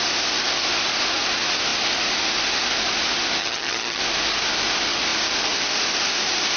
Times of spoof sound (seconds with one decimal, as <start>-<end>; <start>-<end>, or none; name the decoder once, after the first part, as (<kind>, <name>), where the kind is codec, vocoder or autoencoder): 3.4-4.0 (vocoder, HiFi-GAN)